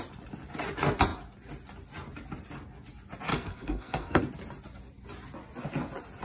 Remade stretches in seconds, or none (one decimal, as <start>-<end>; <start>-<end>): 3.3-4.2